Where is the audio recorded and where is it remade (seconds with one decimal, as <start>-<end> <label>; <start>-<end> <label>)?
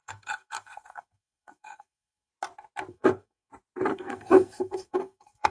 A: 0.0-2.3 remade; 2.3-2.9 recorded; 2.9-3.5 remade; 3.5-3.9 recorded; 3.9-5.5 remade